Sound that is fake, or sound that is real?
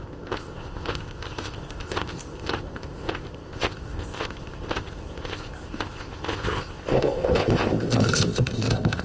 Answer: fake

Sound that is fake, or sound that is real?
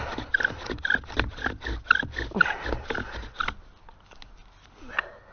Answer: real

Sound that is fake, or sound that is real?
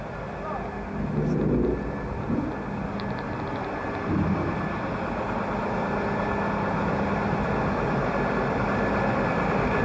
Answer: real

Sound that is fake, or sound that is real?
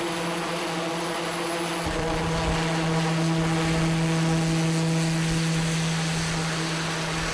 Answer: real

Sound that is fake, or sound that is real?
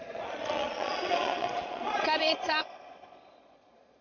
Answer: fake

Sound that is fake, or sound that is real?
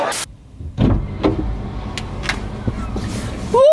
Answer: real